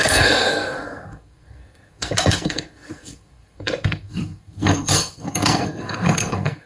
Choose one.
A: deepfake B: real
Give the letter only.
A